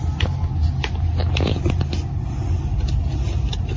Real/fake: real